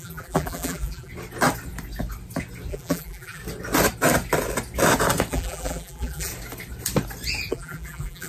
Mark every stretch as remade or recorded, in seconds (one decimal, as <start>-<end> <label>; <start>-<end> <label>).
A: 0.0-1.1 remade; 1.1-2.7 recorded; 2.7-3.4 remade; 3.4-5.3 recorded; 5.3-6.3 remade; 6.3-7.5 recorded; 7.5-8.3 remade